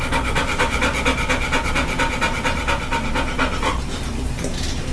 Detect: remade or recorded recorded